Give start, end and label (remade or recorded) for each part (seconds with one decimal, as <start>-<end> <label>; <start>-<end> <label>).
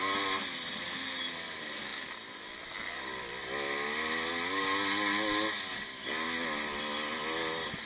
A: 0.0-7.9 recorded